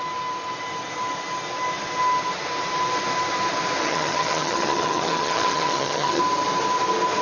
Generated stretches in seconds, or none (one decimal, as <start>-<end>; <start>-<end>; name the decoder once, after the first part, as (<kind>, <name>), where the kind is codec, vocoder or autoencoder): 3.8-6.2 (vocoder, HiFi-GAN)